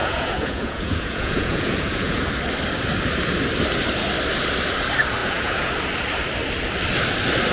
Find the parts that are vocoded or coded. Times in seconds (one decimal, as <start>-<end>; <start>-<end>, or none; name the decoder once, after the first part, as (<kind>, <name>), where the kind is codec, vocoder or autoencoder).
0.0-2.3 (vocoder, Vocos); 5.2-5.7

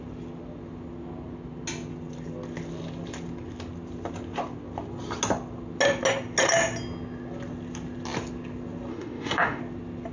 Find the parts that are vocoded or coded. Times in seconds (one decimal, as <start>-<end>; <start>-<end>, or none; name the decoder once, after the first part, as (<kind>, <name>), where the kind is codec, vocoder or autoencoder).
8.9-9.6 (autoencoder, DAC-VAE)

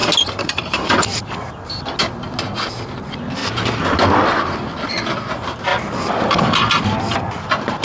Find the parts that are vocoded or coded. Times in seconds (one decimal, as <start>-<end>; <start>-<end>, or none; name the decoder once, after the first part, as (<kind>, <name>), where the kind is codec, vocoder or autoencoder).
0.0-2.0 (vocoder, BigVGAN v2); 5.7-7.8

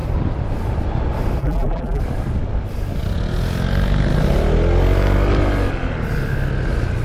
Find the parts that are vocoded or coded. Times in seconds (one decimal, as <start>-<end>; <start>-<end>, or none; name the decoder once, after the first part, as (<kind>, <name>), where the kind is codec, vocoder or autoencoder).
1.4-2.0 (vocoder, BigVGAN v2)

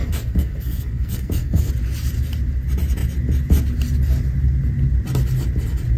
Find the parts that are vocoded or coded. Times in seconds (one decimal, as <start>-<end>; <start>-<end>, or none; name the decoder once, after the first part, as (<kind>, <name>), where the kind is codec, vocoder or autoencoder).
0.0-1.7 (codec, SNAC)